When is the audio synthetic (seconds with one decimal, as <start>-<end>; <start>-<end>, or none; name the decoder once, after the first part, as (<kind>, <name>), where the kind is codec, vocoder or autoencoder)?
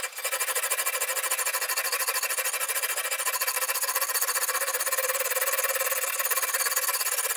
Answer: none